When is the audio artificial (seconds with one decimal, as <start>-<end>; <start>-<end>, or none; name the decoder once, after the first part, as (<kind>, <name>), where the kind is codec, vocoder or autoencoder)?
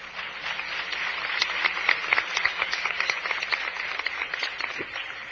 2.5-3.2 (codec, DAC)